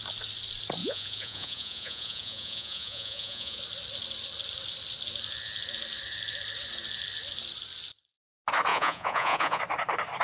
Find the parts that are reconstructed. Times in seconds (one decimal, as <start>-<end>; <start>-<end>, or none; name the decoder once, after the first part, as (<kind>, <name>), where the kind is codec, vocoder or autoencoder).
0.8-3.6 (vocoder, Vocos); 8.7-9.6